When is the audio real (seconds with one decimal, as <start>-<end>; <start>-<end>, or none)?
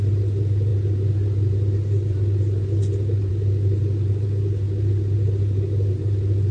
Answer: 0.0-6.5